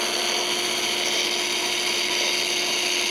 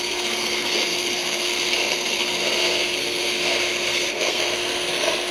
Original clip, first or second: first